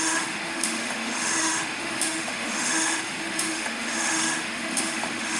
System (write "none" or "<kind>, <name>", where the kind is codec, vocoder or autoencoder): autoencoder, DAC-VAE